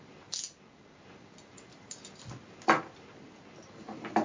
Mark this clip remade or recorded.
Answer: recorded